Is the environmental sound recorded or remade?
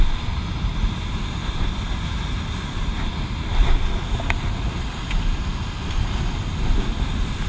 recorded